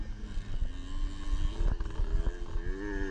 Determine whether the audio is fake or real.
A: real